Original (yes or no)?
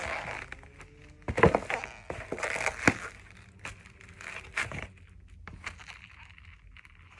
yes